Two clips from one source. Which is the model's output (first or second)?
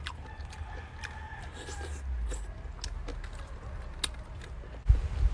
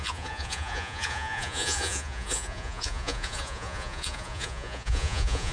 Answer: second